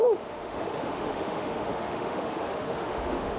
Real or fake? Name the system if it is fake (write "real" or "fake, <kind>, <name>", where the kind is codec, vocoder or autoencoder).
fake, autoencoder, DAC-VAE